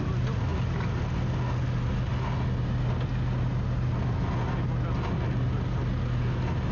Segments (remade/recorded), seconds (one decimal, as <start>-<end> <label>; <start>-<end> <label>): 0.0-6.7 recorded